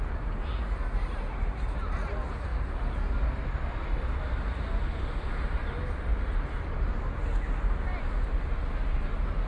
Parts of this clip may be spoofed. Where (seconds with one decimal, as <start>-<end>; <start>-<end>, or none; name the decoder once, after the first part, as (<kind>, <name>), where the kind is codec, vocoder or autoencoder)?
none